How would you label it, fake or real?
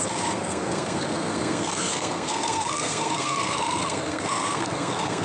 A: fake